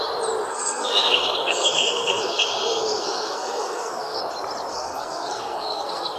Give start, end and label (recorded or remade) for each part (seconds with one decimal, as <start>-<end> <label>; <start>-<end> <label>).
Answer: 0.0-0.5 recorded; 0.5-4.2 remade; 4.2-4.7 recorded; 4.7-6.2 remade